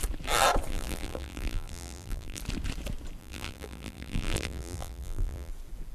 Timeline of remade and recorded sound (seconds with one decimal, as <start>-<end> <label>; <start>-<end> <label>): 0.0-0.7 recorded; 0.7-2.4 remade; 2.4-3.2 recorded; 3.2-5.5 remade; 5.5-5.9 recorded

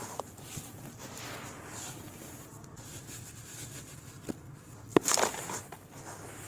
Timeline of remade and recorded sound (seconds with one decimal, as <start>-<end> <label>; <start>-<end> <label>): 0.0-0.6 remade; 0.6-1.7 recorded; 1.7-4.0 remade; 4.0-4.9 recorded; 4.9-5.6 remade; 5.6-6.5 recorded

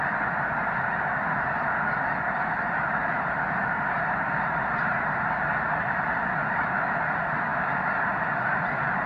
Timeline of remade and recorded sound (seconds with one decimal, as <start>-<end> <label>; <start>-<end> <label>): 0.0-3.0 recorded; 3.0-6.7 remade; 6.7-9.1 recorded

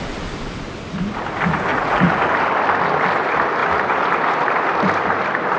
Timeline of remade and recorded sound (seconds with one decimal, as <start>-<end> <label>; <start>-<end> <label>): 0.0-1.7 recorded; 1.7-2.2 remade; 2.2-5.6 recorded

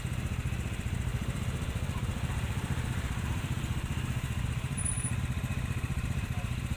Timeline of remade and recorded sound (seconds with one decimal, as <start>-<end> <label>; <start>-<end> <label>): 0.0-1.1 recorded; 1.1-5.2 remade; 5.2-6.8 recorded